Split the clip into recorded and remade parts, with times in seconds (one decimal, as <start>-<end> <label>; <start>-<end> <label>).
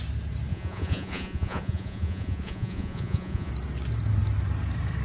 0.0-0.5 recorded; 0.5-3.5 remade; 3.5-5.0 recorded